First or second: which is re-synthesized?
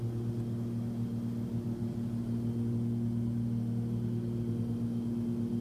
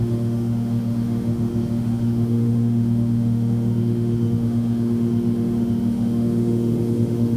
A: second